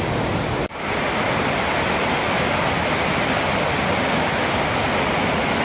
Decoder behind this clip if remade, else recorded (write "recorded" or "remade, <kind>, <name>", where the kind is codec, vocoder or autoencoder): recorded